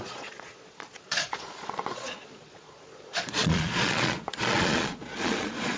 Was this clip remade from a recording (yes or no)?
yes